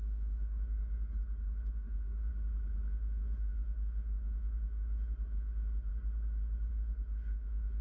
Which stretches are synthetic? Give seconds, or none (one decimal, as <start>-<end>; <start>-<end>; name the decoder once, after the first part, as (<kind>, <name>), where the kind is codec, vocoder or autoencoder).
0.0-0.8 (autoencoder, DAC-VAE); 1.4-2.3; 2.9-5.9; 6.7-7.8